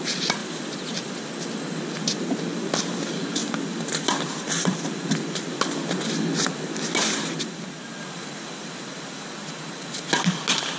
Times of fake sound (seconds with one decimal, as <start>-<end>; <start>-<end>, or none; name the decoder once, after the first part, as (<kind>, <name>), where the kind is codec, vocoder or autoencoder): 0.4-1.8 (vocoder, BigVGAN v2)